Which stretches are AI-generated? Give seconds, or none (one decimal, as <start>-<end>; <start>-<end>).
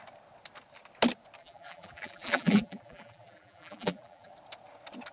1.4-4.3